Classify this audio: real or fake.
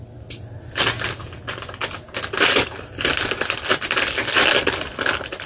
real